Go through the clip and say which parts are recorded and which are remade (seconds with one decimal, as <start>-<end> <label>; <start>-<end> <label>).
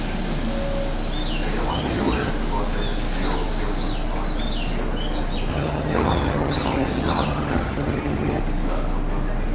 0.0-1.7 recorded; 1.7-2.3 remade; 2.3-5.5 recorded; 5.5-8.4 remade; 8.4-9.5 recorded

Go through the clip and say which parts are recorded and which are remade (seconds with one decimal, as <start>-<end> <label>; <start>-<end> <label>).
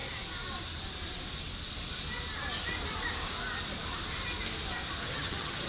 0.0-5.0 recorded; 5.0-5.7 remade